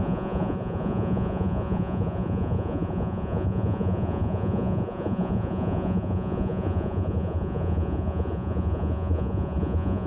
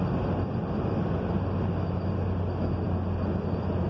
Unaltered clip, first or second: second